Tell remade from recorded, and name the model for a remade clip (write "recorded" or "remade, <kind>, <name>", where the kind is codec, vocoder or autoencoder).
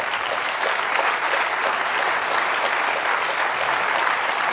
recorded